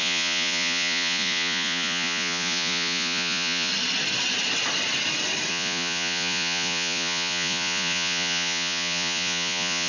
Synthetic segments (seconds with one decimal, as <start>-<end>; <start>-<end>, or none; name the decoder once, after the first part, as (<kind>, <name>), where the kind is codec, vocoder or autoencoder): 0.0-3.7 (vocoder, Vocos); 5.5-9.9